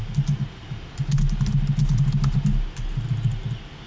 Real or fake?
real